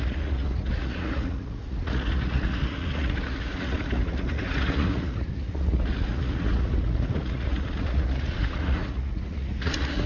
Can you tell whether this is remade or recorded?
remade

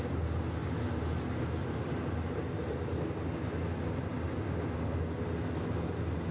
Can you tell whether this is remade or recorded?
recorded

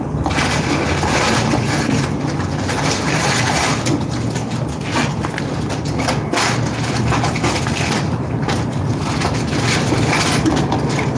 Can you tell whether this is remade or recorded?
recorded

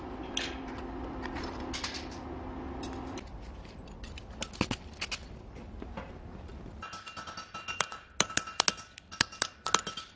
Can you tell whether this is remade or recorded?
recorded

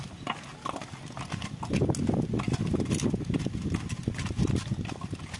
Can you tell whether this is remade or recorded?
recorded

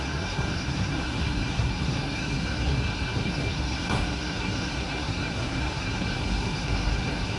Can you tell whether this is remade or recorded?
remade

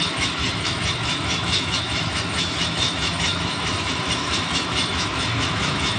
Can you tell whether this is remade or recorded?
remade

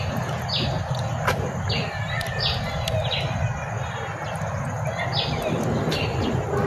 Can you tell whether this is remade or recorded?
recorded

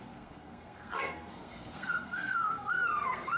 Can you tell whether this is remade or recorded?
remade